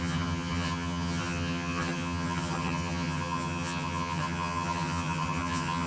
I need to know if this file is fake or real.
fake